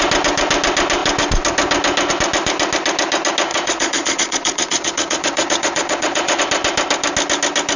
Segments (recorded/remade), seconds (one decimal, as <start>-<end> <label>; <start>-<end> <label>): 0.0-3.5 recorded; 3.5-6.4 remade; 6.4-7.8 recorded